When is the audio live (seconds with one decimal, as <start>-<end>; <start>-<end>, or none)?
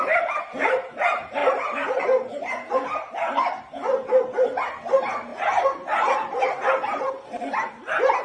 0.0-8.2